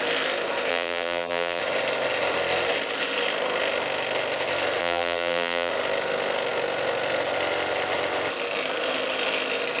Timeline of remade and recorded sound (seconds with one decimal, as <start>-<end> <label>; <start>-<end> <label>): 0.0-0.7 recorded; 0.7-1.6 remade; 1.6-4.8 recorded; 4.8-5.7 remade; 5.7-9.8 recorded

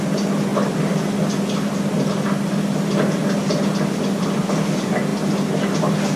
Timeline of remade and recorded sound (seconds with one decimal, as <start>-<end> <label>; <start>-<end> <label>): 0.0-6.2 recorded

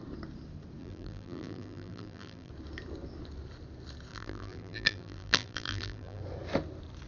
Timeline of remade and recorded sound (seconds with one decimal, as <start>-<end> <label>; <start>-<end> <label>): 0.0-0.8 recorded; 0.8-2.5 remade; 2.5-4.1 recorded; 4.1-6.2 remade; 6.2-7.1 recorded

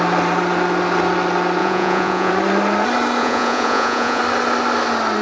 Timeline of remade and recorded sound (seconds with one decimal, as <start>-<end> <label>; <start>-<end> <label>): 0.0-1.6 recorded; 1.6-2.3 remade; 2.3-3.2 recorded; 3.2-4.2 remade; 4.2-5.2 recorded